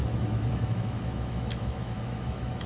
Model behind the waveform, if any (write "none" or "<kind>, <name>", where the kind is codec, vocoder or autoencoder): autoencoder, DAC-VAE